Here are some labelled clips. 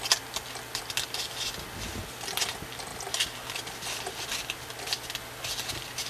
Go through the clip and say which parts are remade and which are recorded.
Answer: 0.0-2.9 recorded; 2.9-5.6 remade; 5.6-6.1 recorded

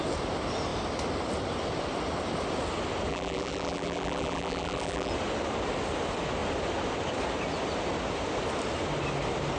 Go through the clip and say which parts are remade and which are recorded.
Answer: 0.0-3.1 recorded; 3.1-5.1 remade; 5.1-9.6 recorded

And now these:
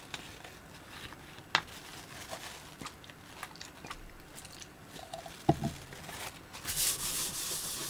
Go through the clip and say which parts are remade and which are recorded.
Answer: 0.0-7.9 recorded

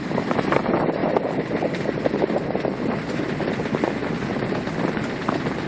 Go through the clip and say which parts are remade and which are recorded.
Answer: 0.0-1.0 recorded; 1.0-4.4 remade; 4.4-5.7 recorded

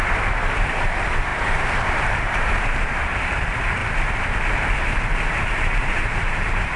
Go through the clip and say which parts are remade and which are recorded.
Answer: 0.0-3.8 remade; 3.8-5.3 recorded; 5.3-6.8 remade

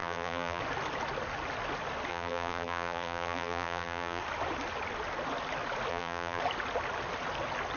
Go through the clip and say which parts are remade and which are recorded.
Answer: 0.0-0.6 remade; 0.6-2.1 recorded; 2.1-4.2 remade; 4.2-5.9 recorded; 5.9-6.4 remade; 6.4-7.8 recorded